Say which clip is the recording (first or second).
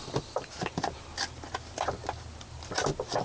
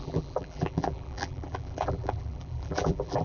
first